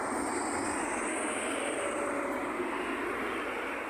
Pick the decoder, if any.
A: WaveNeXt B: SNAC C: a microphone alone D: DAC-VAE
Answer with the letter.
C